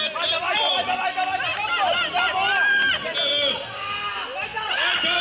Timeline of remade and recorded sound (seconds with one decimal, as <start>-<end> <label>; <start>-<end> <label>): 0.0-5.2 recorded